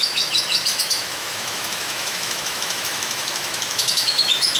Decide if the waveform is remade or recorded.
remade